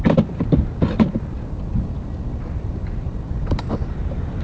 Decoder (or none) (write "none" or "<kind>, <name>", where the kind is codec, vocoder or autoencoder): none